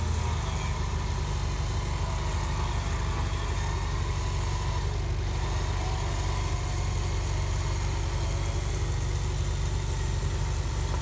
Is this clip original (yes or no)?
yes